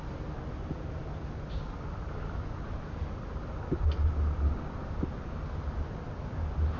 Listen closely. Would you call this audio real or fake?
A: real